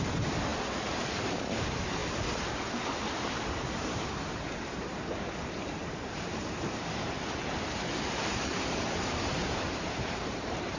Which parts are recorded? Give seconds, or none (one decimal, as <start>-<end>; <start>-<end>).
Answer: 0.5-1.6; 2.0-3.0

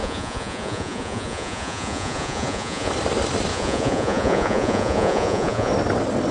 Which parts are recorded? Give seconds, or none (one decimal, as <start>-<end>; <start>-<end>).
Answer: 2.9-3.5; 5.7-6.3

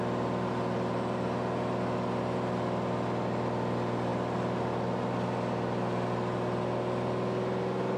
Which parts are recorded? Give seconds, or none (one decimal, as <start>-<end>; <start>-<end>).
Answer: 0.0-8.0

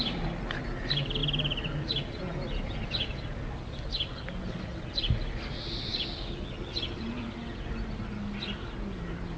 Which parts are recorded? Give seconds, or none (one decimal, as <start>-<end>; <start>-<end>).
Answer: 0.0-9.4

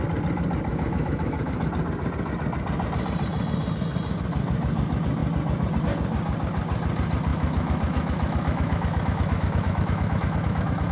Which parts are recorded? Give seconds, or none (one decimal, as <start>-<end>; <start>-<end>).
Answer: 0.0-0.7; 1.7-7.3